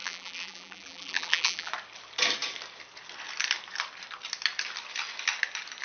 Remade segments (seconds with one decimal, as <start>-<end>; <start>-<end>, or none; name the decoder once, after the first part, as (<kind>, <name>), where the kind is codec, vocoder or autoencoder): 0.0-1.7 (vocoder, BigVGAN v2)